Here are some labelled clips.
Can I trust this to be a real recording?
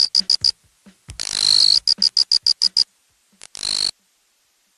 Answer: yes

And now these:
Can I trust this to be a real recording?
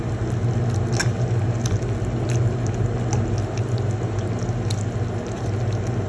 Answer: yes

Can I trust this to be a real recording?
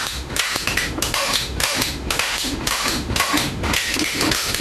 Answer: no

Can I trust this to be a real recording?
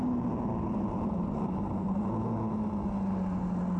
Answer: yes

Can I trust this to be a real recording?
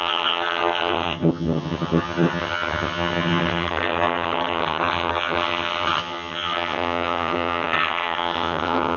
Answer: no